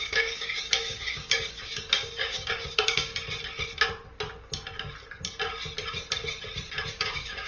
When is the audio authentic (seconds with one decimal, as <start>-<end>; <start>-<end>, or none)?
3.1-6.9